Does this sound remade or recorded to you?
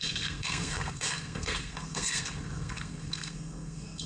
remade